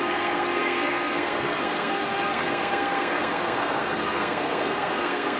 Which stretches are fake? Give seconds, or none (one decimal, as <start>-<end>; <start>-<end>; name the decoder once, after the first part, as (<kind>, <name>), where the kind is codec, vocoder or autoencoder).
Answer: 0.0-5.4 (codec, SNAC)